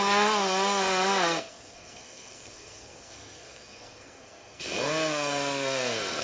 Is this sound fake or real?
fake